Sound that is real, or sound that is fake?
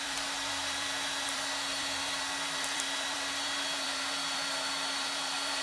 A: fake